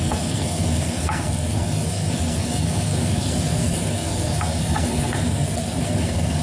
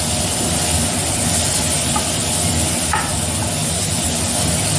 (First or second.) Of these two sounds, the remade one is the first